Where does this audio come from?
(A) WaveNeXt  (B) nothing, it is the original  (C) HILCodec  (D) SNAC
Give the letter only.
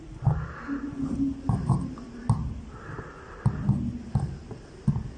B